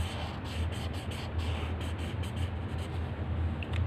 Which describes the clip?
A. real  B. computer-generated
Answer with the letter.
A